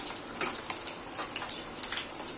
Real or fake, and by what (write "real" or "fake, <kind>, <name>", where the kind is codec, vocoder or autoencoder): real